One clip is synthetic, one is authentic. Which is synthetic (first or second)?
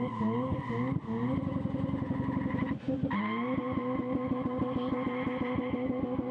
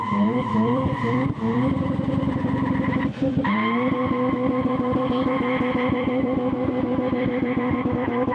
second